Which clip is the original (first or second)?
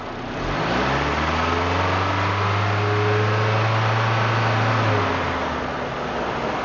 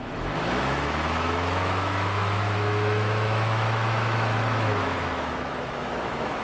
first